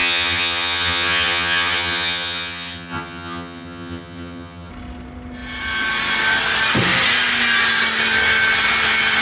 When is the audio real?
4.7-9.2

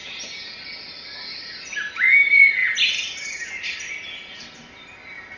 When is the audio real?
0.0-5.4

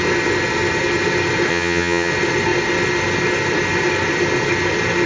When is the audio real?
0.0-1.5; 2.1-5.1

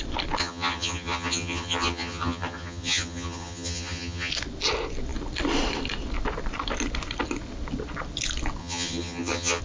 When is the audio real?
0.0-0.4; 4.3-8.6